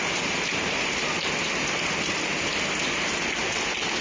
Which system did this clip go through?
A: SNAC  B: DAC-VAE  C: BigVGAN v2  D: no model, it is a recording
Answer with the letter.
D